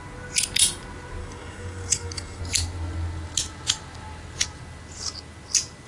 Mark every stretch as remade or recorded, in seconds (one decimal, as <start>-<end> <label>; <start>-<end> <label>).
0.0-1.2 recorded; 1.2-2.4 remade; 2.4-5.9 recorded